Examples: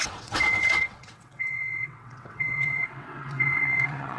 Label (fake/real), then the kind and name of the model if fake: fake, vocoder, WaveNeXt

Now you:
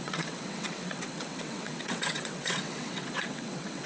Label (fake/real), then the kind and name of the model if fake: fake, vocoder, WaveNeXt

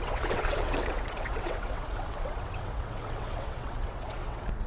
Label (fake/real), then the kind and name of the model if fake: fake, vocoder, WaveNeXt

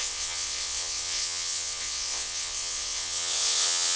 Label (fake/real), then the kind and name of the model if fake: fake, vocoder, WaveNeXt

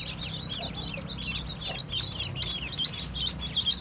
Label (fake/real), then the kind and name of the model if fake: real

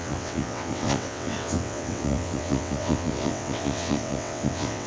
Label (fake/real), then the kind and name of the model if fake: fake, vocoder, WaveNeXt